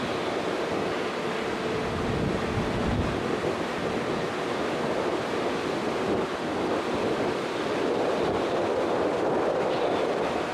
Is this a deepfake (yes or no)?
no